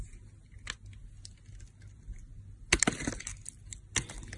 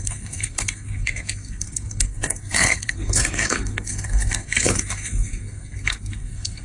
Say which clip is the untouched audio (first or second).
first